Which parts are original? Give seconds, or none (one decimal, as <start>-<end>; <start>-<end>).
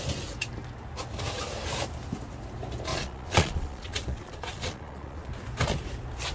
0.0-2.9; 5.3-6.3